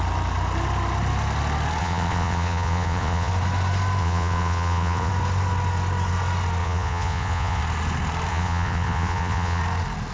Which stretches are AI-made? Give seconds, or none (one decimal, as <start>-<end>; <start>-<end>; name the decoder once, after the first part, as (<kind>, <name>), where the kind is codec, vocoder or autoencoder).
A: 1.8-3.3 (vocoder, Vocos); 4.0-5.1; 6.6-7.6; 8.3-9.6